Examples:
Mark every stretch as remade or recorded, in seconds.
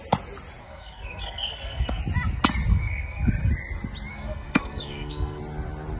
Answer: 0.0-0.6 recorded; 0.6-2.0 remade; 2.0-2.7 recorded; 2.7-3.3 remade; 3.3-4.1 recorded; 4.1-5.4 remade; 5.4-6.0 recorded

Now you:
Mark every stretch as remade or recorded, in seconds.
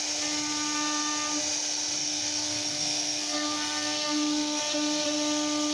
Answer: 0.0-2.0 recorded; 2.0-4.6 remade; 4.6-5.7 recorded